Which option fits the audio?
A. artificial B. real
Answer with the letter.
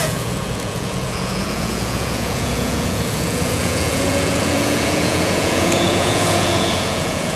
A